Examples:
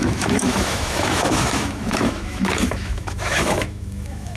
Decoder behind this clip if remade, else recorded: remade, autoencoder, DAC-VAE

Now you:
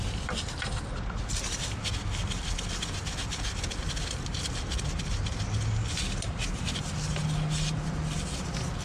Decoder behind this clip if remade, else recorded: recorded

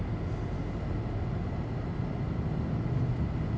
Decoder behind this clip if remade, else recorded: recorded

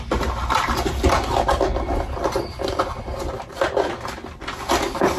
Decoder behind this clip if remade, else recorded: recorded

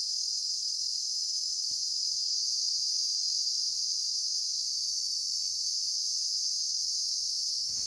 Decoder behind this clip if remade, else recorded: remade, autoencoder, DAC-VAE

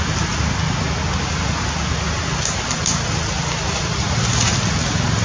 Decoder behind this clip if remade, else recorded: recorded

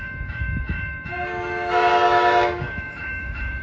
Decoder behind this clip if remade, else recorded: remade, autoencoder, DAC-VAE